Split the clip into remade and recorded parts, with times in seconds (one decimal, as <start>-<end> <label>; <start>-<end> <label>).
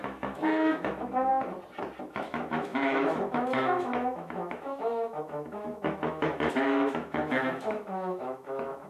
0.0-1.3 remade; 1.3-2.1 recorded; 2.1-8.9 remade